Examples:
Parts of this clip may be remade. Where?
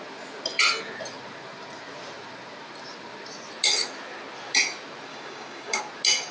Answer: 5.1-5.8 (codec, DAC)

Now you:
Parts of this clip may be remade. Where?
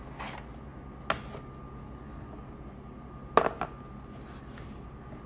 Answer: none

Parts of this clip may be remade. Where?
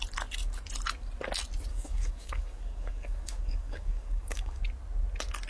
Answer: 1.7-4.6 (codec, DAC)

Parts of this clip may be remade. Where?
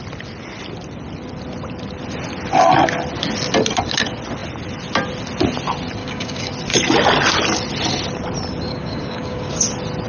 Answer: 6.0-6.5 (codec, DAC); 8.7-9.5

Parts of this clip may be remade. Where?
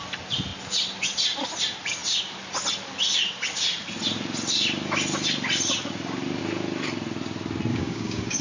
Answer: 7.7-8.4 (codec, DAC)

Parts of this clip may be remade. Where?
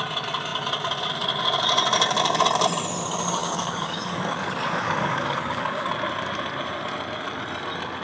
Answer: 3.4-5.9 (codec, DAC)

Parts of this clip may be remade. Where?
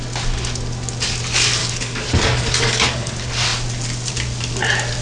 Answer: 1.6-3.1 (codec, DAC)